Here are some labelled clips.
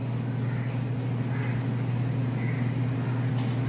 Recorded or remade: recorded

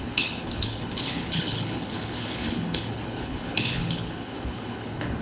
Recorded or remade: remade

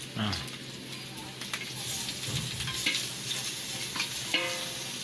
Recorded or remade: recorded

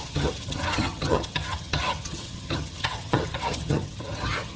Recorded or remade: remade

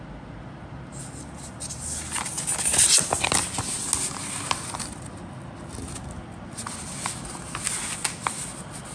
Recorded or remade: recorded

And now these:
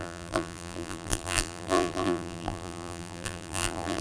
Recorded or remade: remade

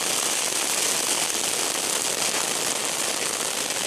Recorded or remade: recorded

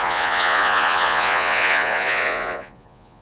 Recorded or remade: remade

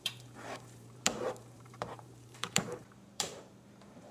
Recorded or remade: remade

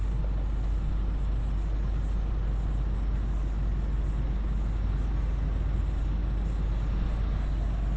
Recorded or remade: recorded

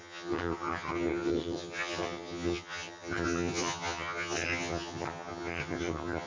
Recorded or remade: remade